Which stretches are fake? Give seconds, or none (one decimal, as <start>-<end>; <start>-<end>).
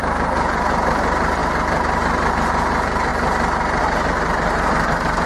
0.0-3.1; 3.8-5.3